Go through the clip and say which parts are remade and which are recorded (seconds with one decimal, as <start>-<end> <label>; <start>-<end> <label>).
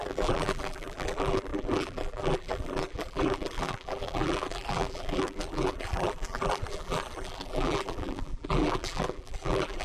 0.0-9.8 remade